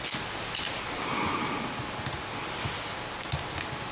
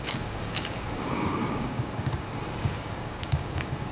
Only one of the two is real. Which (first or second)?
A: first